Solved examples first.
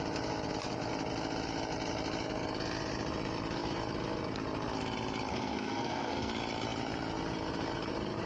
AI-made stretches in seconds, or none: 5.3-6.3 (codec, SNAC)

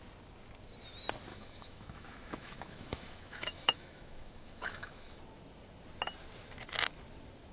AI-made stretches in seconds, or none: 1.3-5.2 (autoencoder, DAC-VAE)

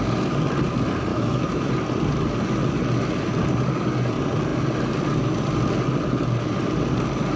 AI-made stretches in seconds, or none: 1.1-1.7 (autoencoder, DAC-VAE)

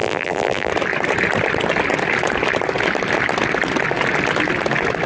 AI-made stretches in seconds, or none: 0.0-0.7 (vocoder, BigVGAN v2)

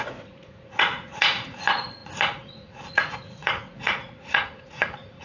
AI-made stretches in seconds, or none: 0.0-5.2 (vocoder, Vocos)

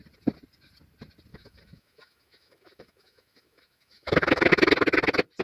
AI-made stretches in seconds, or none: 1.3-4.5 (autoencoder, DAC-VAE)